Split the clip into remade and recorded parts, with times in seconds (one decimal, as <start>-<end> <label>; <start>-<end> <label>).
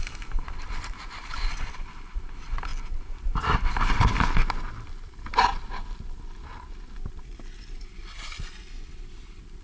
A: 0.0-9.6 recorded